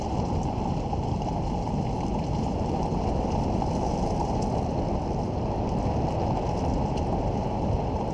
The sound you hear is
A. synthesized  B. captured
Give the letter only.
B